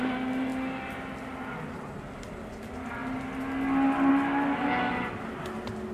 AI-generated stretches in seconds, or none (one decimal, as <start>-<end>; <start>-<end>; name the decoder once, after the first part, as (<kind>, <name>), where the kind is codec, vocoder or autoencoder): none